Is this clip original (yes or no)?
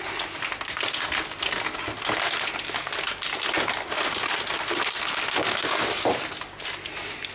yes